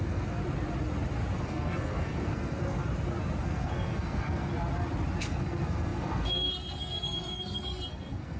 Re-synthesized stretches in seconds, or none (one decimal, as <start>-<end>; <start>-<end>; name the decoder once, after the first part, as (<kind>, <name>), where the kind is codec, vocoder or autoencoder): 0.0-0.4 (codec, SNAC); 1.4-2.8; 3.4-4.5; 5.2-8.4